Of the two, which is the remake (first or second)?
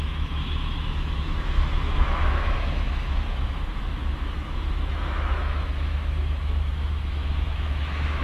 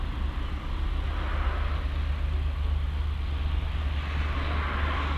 first